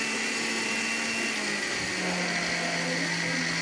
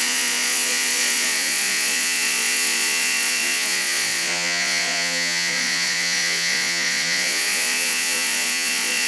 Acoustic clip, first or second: first